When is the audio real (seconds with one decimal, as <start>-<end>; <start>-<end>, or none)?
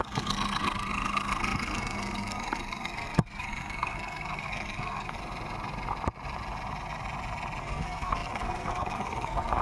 5.2-7.6